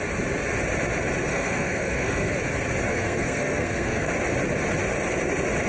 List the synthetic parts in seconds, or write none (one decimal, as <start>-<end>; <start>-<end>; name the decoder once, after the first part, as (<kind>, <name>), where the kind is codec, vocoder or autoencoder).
1.3-2.3 (codec, SNAC); 2.9-4.1